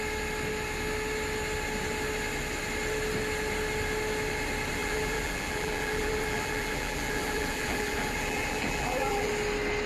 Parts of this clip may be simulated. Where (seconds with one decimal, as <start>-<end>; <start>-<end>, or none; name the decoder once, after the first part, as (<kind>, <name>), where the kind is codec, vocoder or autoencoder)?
4.8-9.3 (vocoder, BigVGAN v2)